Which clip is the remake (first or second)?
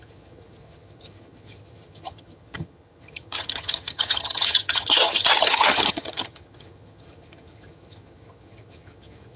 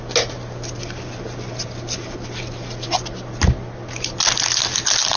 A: first